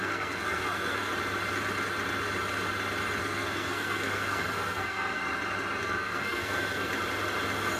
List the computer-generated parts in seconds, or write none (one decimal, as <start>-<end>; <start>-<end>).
0.0-1.1; 3.2-5.2; 5.8-6.9